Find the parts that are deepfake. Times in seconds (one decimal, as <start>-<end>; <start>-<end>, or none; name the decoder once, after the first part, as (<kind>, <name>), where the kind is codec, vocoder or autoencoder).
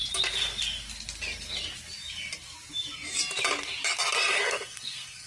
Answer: 4.3-5.3 (codec, SNAC)